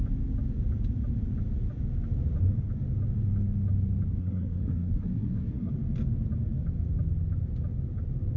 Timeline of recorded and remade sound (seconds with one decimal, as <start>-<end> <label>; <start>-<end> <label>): 0.0-4.2 recorded; 4.2-5.7 remade; 5.7-8.4 recorded